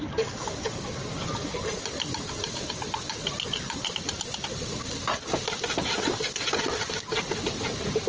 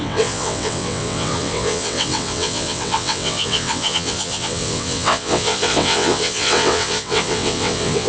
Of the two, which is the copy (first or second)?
second